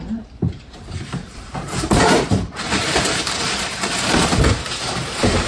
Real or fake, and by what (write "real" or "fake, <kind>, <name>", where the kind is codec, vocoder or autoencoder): fake, vocoder, BigVGAN v2